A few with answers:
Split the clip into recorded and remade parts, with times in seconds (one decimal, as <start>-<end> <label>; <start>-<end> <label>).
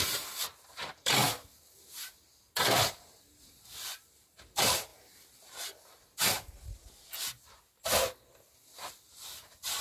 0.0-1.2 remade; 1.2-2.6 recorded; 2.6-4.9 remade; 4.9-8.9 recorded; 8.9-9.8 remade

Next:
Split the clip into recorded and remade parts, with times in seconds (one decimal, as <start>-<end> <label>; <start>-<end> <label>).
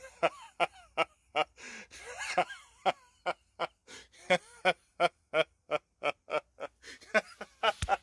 0.0-1.3 recorded; 1.3-2.4 remade; 2.4-3.8 recorded; 3.8-6.5 remade; 6.5-8.0 recorded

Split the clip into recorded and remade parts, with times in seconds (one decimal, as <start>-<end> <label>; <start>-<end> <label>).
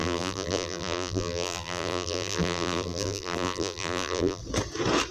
0.0-4.4 remade; 4.4-5.1 recorded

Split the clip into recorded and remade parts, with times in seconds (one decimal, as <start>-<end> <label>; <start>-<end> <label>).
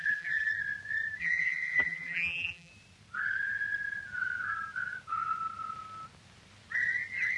0.0-0.5 remade; 0.5-1.2 recorded; 1.2-2.7 remade; 2.7-7.4 recorded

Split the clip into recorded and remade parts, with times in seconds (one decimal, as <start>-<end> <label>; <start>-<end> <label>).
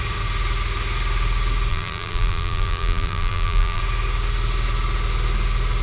0.0-1.7 recorded; 1.7-3.8 remade; 3.8-5.8 recorded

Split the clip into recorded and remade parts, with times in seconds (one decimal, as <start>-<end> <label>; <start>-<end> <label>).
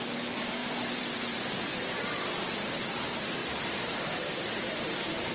0.0-0.6 recorded; 0.6-1.5 remade; 1.5-3.4 recorded; 3.4-5.3 remade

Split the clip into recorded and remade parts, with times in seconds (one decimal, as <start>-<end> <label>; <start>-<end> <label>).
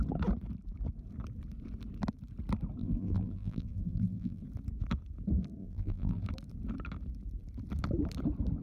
0.0-2.8 recorded; 2.8-4.4 remade; 4.4-5.6 recorded; 5.6-6.2 remade; 6.2-8.6 recorded